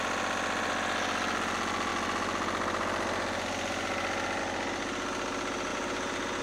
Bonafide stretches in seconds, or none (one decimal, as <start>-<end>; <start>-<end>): 0.0-5.7